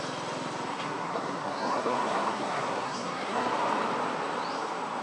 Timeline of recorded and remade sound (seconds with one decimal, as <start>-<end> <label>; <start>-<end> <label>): 0.0-0.7 recorded; 0.7-3.5 remade; 3.5-5.0 recorded

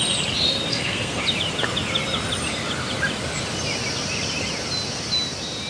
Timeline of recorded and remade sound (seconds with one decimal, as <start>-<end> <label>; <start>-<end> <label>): 0.0-0.7 recorded; 0.7-1.2 remade; 1.2-5.7 recorded

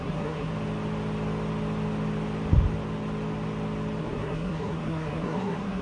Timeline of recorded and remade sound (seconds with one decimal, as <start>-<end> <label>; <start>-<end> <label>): 0.0-0.5 remade; 0.5-4.0 recorded; 4.0-5.8 remade

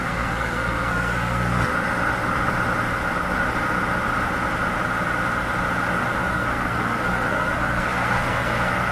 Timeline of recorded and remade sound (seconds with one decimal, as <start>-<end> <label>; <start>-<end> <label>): 0.0-1.7 remade; 1.7-6.3 recorded; 6.3-8.9 remade

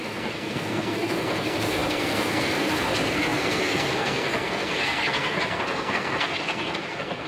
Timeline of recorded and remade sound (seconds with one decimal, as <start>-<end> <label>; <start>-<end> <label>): 0.0-7.3 remade

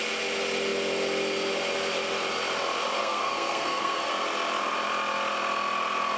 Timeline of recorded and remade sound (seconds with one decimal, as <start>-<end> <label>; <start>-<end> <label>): 0.0-3.0 recorded; 3.0-4.1 remade; 4.1-6.2 recorded

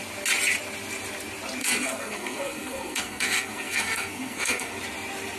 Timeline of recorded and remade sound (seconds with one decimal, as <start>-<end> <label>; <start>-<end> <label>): 0.0-1.6 recorded; 1.6-4.8 remade; 4.8-5.4 recorded